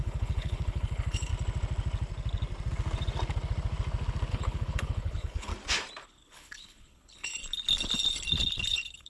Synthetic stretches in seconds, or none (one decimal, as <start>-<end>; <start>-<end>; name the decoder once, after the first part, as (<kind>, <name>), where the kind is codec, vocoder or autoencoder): 0.0-1.3 (codec, HILCodec); 4.3-5.5; 6.0-7.4; 8.7-9.1